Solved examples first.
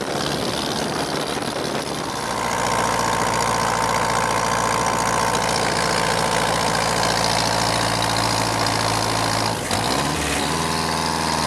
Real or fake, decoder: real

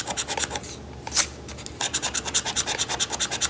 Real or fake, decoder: real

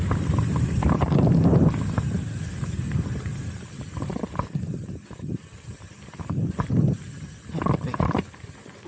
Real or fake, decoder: real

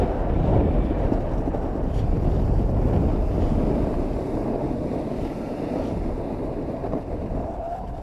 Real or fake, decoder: real